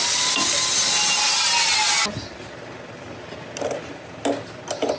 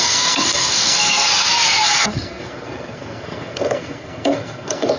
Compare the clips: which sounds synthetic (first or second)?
second